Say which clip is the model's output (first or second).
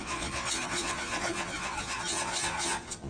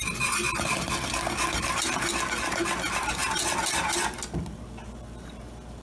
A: first